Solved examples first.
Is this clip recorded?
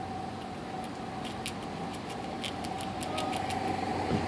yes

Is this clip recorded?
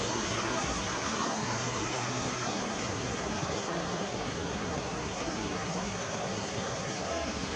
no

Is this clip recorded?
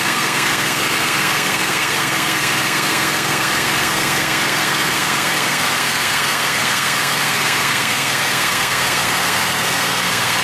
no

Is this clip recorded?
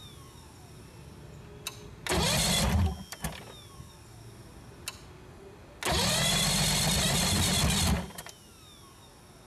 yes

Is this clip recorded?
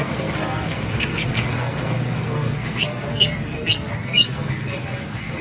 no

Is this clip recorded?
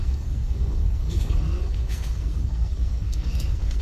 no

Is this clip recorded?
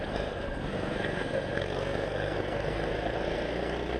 no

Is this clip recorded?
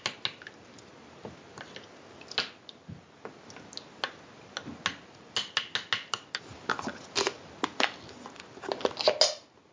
yes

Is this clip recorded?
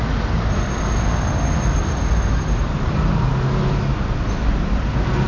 yes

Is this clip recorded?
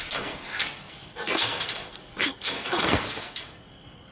no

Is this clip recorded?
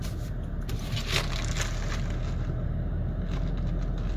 yes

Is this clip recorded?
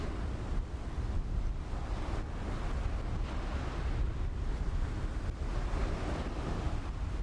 yes